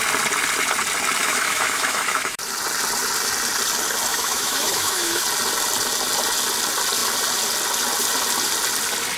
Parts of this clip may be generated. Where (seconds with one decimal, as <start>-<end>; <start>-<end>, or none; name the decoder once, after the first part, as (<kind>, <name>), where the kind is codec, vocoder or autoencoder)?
1.2-2.4 (autoencoder, DAC-VAE); 4.1-5.2